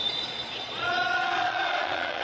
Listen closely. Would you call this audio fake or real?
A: fake